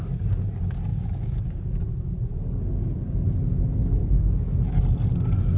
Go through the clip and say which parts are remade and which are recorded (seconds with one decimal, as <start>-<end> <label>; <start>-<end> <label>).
0.0-0.9 recorded; 0.9-1.8 remade; 1.8-4.0 recorded; 4.0-4.6 remade; 4.6-5.6 recorded